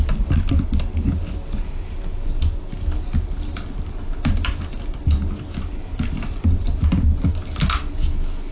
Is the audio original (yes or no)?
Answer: yes